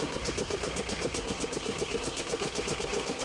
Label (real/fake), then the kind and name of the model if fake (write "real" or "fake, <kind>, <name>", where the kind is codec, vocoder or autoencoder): fake, codec, SNAC